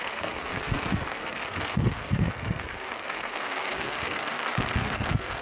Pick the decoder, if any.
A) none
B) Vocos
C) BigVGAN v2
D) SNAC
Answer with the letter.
D